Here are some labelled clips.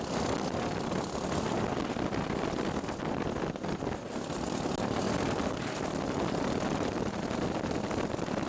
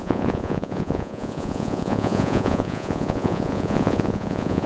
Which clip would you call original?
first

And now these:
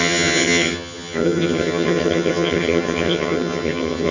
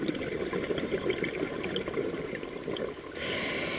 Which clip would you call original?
second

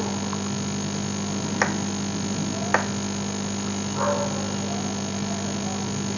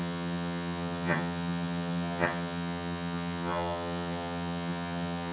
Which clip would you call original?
first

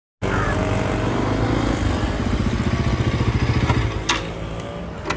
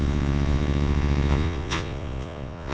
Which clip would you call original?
first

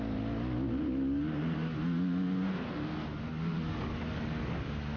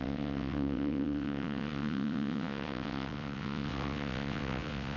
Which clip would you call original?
first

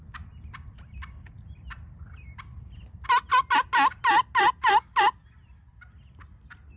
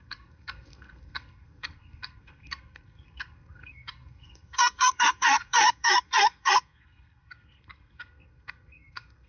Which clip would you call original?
first